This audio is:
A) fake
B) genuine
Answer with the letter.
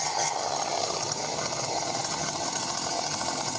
A